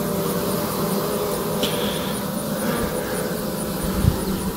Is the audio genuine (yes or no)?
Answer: yes